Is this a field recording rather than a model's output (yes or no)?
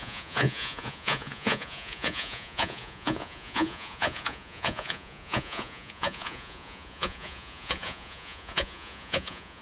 no